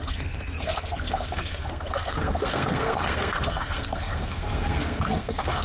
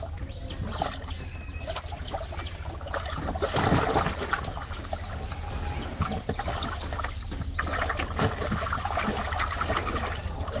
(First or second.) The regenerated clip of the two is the first